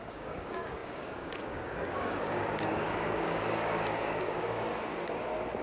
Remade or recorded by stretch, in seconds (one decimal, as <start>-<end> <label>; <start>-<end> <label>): 0.0-4.7 remade; 4.7-5.6 recorded